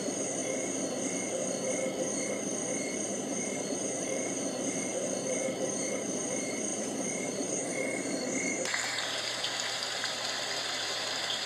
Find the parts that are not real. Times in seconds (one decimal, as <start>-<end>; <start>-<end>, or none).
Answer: 0.0-0.4; 2.9-11.5